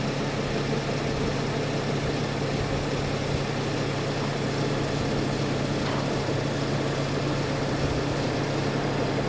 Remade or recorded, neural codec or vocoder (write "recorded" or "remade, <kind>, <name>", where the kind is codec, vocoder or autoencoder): recorded